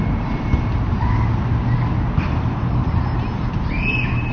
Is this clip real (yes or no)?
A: yes